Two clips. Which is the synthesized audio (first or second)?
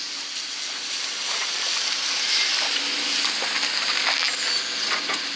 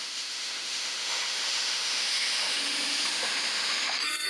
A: second